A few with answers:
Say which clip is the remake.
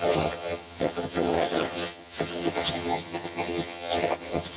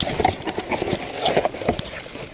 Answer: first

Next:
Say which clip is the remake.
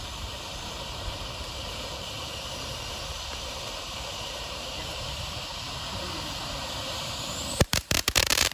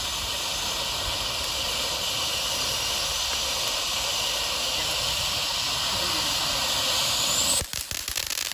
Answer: first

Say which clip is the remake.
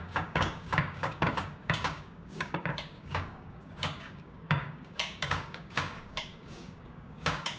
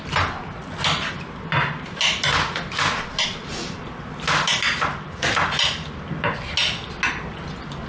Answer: first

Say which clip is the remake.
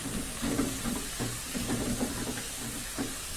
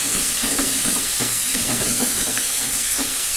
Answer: second